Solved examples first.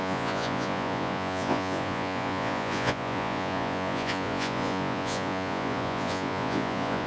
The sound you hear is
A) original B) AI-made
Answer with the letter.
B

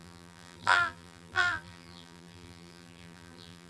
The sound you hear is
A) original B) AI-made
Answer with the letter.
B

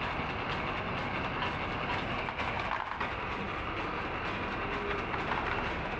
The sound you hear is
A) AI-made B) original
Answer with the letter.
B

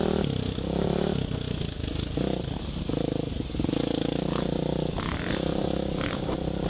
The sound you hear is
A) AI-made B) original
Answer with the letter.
B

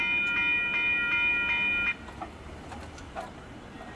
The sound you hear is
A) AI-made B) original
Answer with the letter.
B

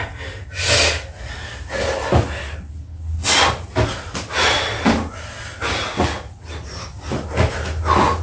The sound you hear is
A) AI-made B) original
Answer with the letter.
B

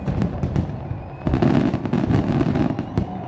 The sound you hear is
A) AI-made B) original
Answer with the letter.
B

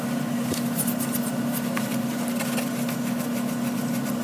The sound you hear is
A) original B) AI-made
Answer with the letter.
A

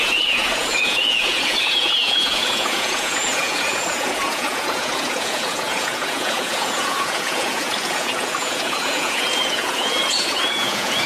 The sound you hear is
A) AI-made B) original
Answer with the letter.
A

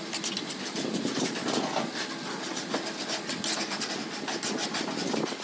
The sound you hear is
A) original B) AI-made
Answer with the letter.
A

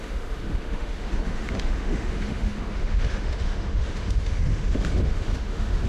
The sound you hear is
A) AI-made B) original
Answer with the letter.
A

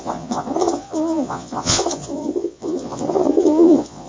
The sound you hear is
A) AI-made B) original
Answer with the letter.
A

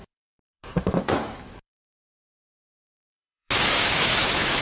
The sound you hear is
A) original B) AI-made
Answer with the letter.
B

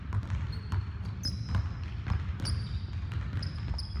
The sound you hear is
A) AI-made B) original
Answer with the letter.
B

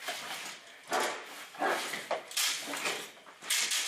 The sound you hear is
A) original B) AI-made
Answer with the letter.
A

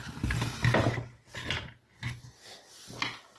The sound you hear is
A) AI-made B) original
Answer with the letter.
B